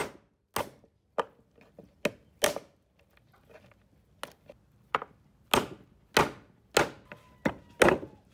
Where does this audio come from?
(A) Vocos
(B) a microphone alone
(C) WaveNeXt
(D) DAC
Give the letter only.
B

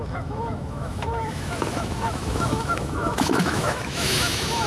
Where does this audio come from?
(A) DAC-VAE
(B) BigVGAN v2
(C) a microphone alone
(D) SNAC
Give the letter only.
A